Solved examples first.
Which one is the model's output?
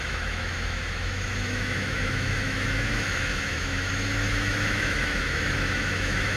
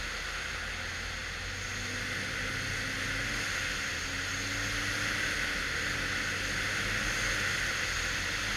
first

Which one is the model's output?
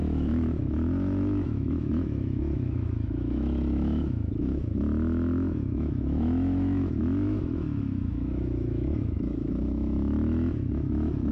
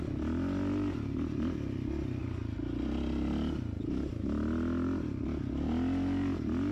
first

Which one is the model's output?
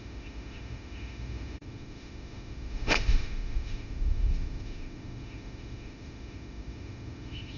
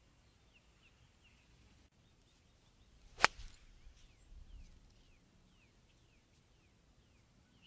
first